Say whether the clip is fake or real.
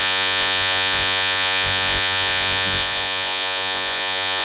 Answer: fake